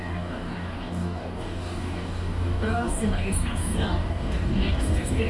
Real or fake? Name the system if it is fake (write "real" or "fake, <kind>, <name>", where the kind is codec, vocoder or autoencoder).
fake, codec, DAC